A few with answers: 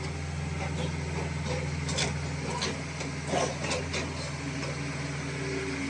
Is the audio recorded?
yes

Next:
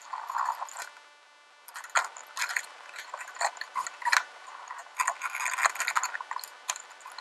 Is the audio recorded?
yes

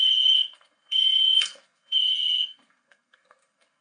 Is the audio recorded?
no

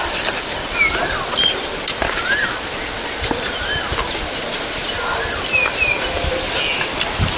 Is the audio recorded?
yes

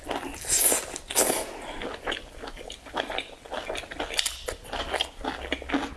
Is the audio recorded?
yes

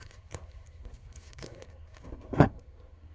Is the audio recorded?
no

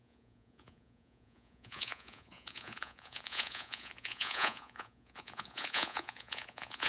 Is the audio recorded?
no